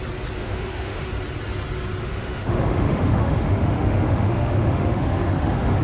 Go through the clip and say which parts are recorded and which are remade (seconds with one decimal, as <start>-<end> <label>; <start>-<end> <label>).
0.0-0.4 recorded; 0.4-1.1 remade; 1.1-2.0 recorded; 2.0-5.8 remade